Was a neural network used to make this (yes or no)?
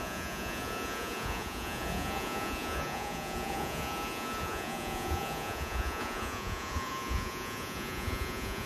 yes